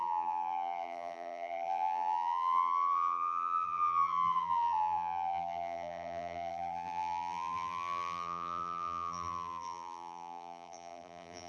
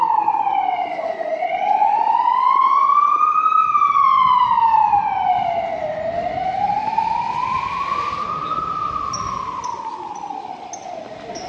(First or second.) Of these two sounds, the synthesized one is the first